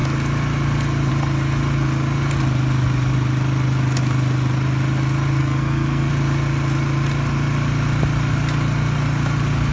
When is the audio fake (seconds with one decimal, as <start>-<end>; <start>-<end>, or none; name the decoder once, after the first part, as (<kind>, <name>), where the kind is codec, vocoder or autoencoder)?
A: 5.4-6.1 (codec, SNAC)